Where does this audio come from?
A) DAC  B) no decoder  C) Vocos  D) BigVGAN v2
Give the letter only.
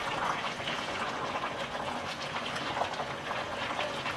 C